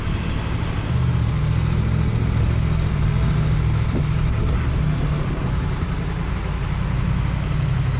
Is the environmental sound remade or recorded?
recorded